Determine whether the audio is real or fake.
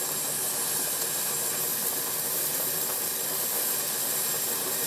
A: real